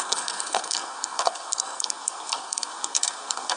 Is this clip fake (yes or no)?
yes